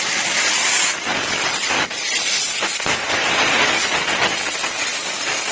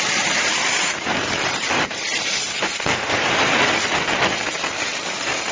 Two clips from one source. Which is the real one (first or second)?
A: first